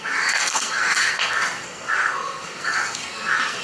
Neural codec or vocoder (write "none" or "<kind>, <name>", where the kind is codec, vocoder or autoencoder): codec, SNAC